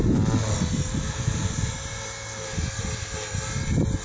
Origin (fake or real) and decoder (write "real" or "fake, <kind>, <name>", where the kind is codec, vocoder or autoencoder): real